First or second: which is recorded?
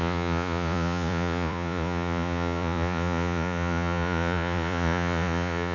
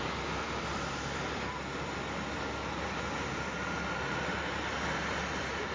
second